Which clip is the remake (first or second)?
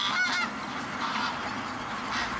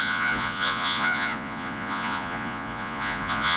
second